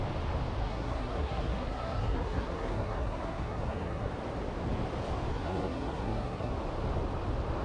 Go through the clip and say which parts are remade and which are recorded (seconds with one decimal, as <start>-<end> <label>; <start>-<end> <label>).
0.0-0.6 recorded; 0.6-4.1 remade; 4.1-5.3 recorded; 5.3-6.5 remade; 6.5-7.6 recorded